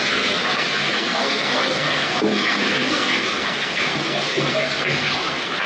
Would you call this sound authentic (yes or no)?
no